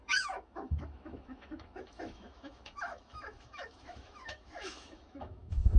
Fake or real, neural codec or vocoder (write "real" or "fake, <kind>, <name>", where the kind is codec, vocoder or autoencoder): fake, autoencoder, DAC-VAE